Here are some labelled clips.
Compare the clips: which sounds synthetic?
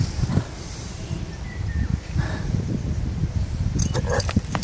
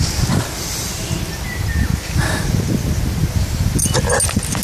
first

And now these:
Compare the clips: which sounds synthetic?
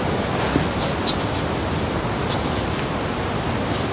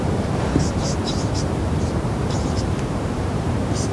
second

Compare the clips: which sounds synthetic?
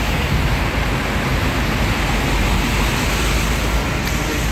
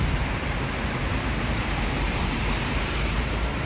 second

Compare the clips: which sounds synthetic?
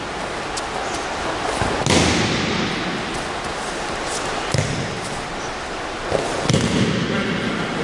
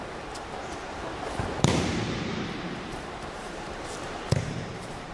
second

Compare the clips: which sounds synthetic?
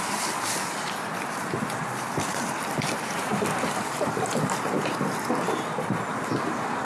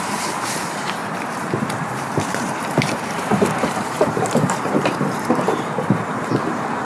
second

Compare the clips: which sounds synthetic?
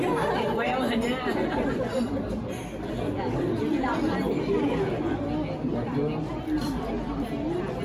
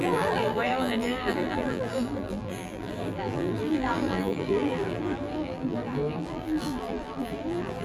second